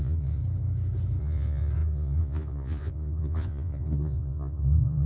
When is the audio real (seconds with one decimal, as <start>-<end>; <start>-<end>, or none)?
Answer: 0.4-1.2